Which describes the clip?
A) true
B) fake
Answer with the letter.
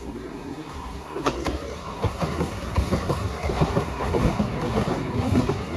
B